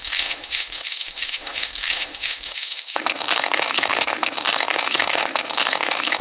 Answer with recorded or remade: remade